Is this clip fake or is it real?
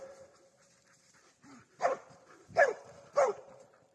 fake